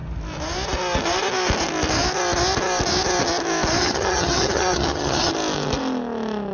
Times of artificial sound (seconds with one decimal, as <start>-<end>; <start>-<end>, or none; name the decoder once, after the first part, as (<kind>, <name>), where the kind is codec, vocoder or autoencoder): 3.8-5.3 (vocoder, HiFi-GAN)